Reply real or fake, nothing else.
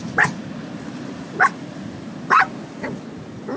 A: real